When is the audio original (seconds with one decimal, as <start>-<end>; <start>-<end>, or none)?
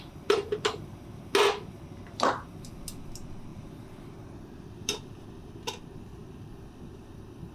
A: 0.0-3.5; 5.8-7.5